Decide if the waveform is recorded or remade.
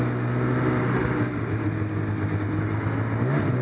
recorded